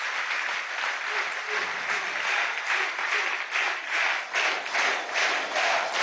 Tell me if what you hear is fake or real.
real